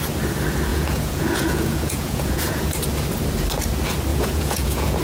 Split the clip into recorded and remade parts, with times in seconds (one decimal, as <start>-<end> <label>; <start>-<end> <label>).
0.0-0.7 recorded; 0.7-2.7 remade; 2.7-4.1 recorded; 4.1-5.0 remade